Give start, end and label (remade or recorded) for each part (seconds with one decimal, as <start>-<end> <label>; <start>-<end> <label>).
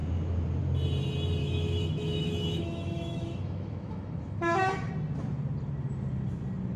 0.0-1.4 recorded; 1.4-4.9 remade; 4.9-6.8 recorded